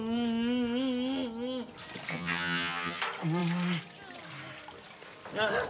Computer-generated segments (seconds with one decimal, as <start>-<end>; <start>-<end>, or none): 2.1-3.0